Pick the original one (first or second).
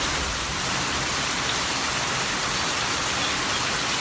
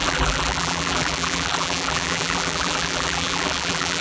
first